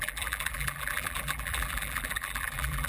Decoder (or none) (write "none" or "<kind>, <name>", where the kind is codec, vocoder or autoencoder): vocoder, BigVGAN v2